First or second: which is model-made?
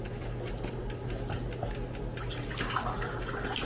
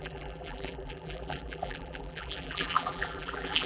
second